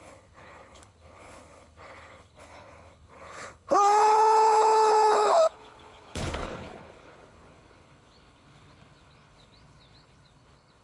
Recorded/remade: remade